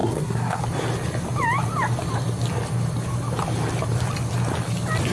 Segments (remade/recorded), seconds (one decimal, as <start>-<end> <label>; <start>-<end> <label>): 0.0-0.6 remade; 0.6-5.1 recorded